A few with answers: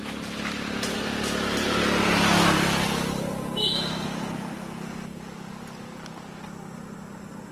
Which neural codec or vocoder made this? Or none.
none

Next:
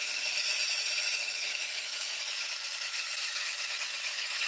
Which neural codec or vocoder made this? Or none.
autoencoder, DAC-VAE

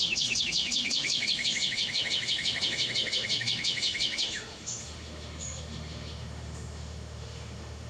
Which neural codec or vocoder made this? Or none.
autoencoder, DAC-VAE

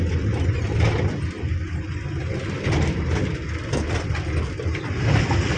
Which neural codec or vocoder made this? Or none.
none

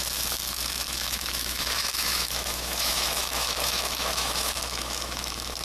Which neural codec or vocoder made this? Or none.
autoencoder, DAC-VAE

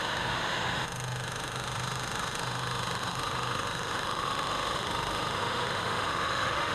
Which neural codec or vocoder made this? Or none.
autoencoder, DAC-VAE